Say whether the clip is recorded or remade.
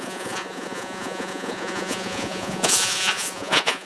remade